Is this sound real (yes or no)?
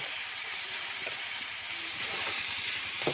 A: no